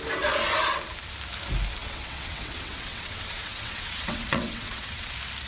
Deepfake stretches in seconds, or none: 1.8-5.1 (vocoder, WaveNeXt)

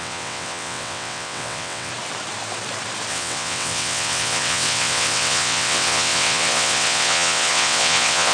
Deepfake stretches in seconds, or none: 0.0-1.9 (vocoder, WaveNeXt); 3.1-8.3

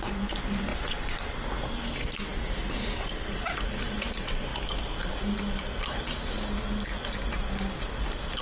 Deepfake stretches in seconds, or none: 0.7-1.2 (vocoder, WaveNeXt)

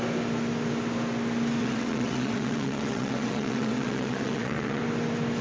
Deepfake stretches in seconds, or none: 1.6-4.8 (vocoder, WaveNeXt)

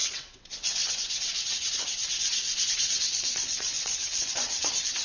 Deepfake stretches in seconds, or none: 0.0-5.0 (vocoder, WaveNeXt)

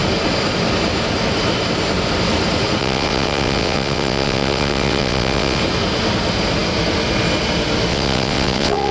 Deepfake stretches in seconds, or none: 2.8-5.6 (vocoder, WaveNeXt); 7.9-8.9

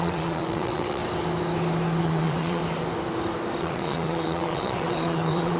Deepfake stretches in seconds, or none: 0.0-1.0 (vocoder, WaveNeXt); 2.0-2.6; 3.6-5.6